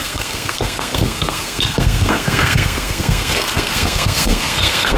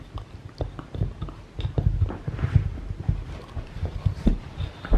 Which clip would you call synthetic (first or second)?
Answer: first